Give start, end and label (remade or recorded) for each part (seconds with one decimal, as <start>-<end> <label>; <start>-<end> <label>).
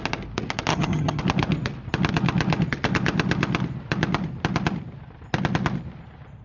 0.0-0.7 recorded; 0.7-1.2 remade; 1.2-6.4 recorded